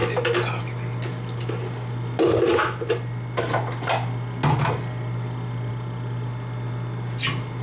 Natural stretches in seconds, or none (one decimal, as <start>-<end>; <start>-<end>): 0.0-7.6